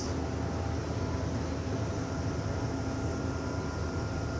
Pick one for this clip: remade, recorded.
recorded